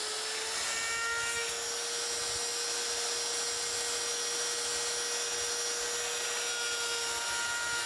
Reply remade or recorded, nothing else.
recorded